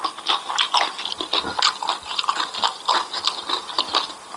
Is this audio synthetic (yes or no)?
no